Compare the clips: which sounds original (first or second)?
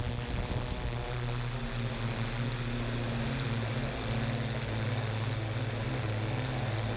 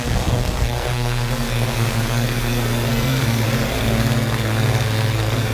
first